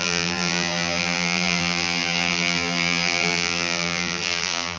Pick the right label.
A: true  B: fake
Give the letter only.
B